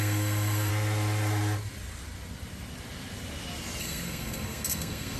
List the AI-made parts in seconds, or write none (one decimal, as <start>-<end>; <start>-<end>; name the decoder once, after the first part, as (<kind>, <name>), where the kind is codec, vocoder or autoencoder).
0.0-0.7 (codec, SNAC); 3.8-5.2